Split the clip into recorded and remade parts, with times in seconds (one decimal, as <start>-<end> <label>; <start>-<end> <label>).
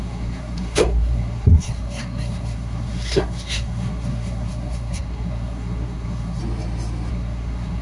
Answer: 0.0-6.4 remade; 6.4-7.1 recorded; 7.1-7.8 remade